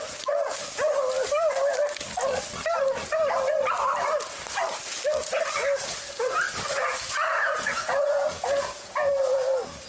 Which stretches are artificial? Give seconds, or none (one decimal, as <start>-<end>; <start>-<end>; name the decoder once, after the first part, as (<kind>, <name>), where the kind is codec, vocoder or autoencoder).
7.4-9.1 (vocoder, Vocos)